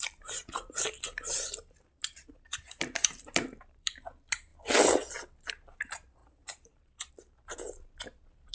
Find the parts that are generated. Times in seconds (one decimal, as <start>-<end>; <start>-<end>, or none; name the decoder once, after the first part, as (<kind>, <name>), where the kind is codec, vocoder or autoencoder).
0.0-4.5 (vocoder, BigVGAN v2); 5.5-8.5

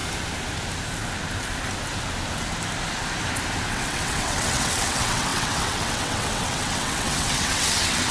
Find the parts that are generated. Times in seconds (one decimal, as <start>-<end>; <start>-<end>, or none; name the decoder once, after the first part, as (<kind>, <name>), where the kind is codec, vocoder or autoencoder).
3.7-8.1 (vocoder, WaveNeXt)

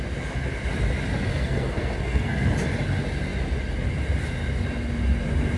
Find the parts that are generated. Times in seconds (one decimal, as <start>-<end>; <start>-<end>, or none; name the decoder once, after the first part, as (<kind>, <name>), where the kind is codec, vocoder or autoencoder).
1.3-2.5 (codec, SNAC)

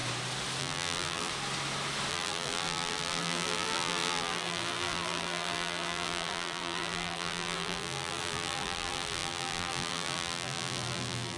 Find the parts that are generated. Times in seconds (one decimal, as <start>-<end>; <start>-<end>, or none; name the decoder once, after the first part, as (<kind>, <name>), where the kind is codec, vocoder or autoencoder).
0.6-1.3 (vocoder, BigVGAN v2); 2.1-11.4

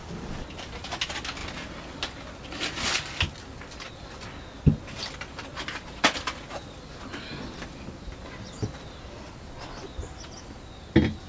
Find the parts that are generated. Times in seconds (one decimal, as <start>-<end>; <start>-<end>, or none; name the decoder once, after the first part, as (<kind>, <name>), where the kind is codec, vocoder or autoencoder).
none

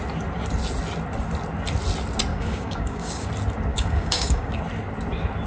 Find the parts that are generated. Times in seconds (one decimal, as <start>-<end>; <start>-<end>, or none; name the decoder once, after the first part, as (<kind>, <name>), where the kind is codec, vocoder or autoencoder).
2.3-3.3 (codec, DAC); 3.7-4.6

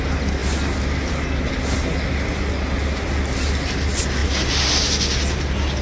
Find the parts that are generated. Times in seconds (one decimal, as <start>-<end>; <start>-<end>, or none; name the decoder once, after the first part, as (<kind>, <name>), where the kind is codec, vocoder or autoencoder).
none

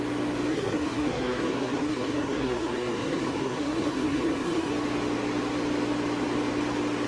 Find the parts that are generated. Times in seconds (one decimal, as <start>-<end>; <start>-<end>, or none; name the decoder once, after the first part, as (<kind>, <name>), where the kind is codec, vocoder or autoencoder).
0.5-4.7 (codec, SNAC)